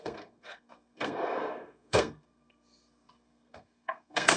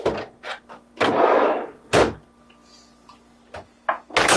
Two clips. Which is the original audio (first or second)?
second